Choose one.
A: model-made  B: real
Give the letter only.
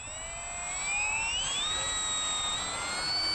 B